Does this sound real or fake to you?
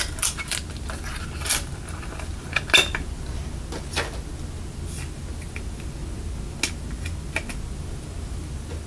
real